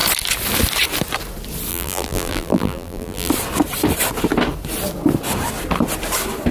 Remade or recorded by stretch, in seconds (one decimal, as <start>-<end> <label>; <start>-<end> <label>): 0.0-1.7 recorded; 1.7-3.3 remade; 3.3-6.5 recorded